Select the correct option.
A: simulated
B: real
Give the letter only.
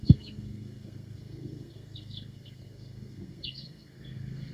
A